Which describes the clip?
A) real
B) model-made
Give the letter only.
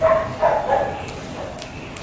A